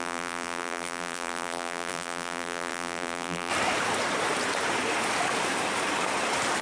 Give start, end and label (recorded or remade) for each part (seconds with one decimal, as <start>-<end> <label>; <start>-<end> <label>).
0.0-3.5 remade; 3.5-6.6 recorded

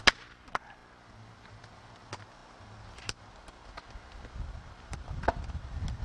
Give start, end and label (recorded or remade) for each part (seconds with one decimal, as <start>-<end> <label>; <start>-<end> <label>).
0.0-6.0 recorded